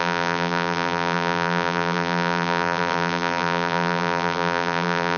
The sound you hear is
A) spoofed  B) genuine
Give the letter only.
A